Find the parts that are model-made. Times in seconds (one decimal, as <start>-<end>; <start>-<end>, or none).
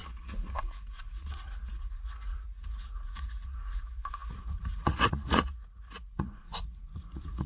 0.0-7.5